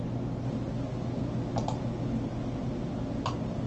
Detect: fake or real real